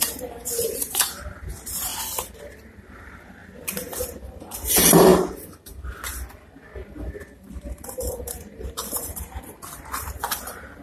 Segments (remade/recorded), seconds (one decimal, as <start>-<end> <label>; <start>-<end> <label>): 0.0-1.9 remade; 1.9-2.4 recorded; 2.4-3.4 remade; 3.4-4.0 recorded; 4.0-5.1 remade; 5.1-6.9 recorded; 6.9-10.8 remade